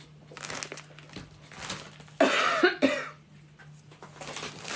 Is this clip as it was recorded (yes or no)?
yes